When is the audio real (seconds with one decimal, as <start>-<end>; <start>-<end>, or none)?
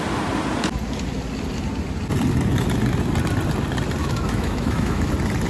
0.0-4.0; 5.1-5.5